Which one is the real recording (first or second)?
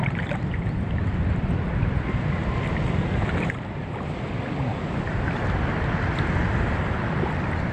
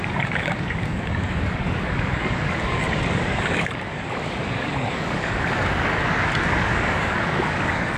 first